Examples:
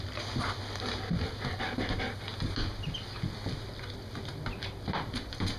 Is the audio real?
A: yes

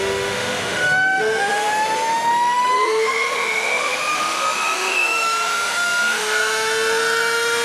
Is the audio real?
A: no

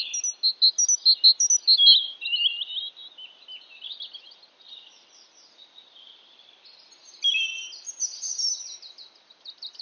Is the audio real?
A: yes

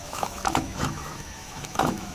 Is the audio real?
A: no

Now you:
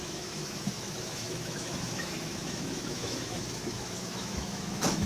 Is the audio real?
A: no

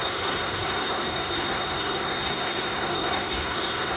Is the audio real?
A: no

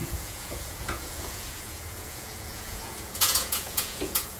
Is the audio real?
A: no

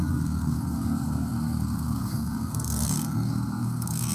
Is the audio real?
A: no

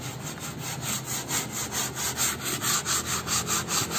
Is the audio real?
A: yes